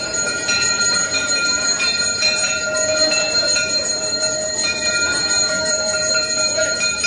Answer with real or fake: fake